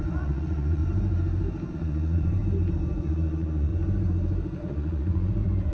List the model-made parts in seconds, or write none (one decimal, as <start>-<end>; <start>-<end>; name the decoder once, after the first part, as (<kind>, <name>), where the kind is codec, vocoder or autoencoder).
0.0-0.8 (vocoder, Vocos); 1.7-2.4; 2.9-3.7; 4.6-5.7